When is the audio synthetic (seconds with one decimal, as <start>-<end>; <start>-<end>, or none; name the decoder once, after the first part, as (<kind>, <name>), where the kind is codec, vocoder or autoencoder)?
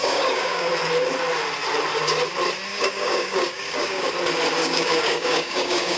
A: 0.0-0.7 (codec, DAC); 2.7-4.1; 4.6-6.0